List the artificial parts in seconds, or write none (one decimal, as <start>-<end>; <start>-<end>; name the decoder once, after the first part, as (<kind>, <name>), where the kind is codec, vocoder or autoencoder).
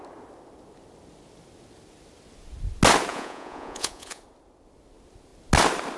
3.1-4.2 (vocoder, Vocos)